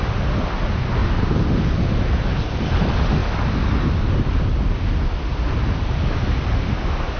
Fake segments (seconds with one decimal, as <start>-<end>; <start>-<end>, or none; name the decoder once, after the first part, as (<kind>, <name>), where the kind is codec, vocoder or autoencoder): 1.0-1.7 (vocoder, BigVGAN v2)